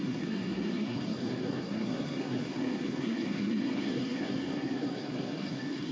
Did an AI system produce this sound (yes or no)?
yes